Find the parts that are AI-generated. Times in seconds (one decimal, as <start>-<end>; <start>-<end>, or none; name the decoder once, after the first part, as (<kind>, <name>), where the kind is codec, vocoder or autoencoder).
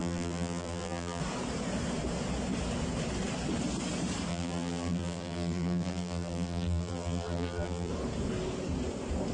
0.0-1.2 (vocoder, BigVGAN v2); 4.3-7.9